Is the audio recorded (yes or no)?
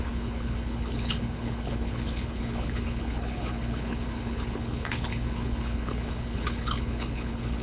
no